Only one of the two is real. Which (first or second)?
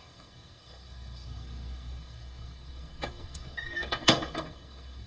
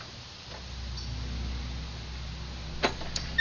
second